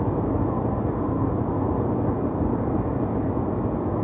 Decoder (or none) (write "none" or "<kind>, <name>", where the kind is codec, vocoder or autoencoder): none